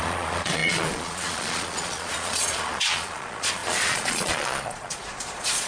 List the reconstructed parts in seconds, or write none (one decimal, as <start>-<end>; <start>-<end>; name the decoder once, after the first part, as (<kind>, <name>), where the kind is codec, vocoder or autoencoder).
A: 0.0-5.7 (vocoder, Vocos)